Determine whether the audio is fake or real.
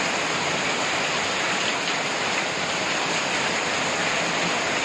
real